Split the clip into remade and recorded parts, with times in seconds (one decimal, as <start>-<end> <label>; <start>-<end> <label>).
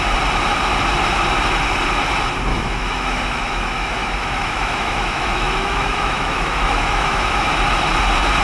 0.0-2.5 recorded; 2.5-7.5 remade; 7.5-8.4 recorded